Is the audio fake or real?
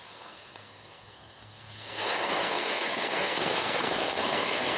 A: fake